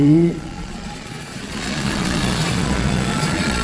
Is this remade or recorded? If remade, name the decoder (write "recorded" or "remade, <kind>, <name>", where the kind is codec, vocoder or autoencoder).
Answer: remade, vocoder, Vocos